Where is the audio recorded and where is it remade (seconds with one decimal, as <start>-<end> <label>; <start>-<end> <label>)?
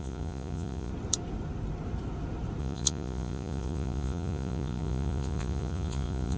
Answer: 0.0-0.9 remade; 0.9-2.6 recorded; 2.6-6.4 remade